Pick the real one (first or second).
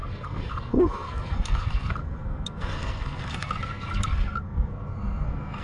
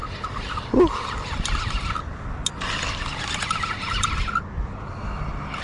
second